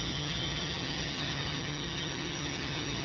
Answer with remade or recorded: remade